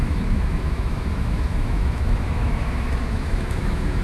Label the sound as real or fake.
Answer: fake